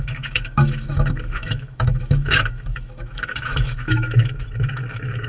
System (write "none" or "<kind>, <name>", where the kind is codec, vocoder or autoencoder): autoencoder, DAC-VAE